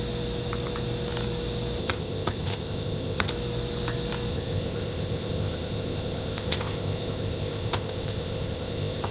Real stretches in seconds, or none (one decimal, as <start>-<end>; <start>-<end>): 0.0-1.8; 3.3-4.3